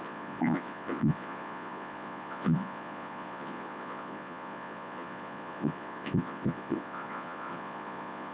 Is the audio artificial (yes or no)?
yes